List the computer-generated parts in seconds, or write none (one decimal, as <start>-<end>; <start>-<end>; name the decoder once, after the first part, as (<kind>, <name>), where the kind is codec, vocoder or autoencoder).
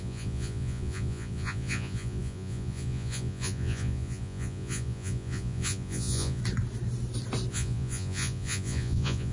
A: 0.0-6.4 (vocoder, Vocos); 7.5-9.3